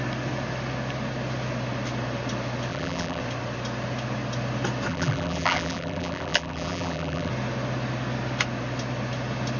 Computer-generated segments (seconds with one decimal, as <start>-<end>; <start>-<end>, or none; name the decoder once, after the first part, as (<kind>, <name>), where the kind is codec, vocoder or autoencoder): 2.7-3.2 (vocoder, BigVGAN v2); 4.9-7.3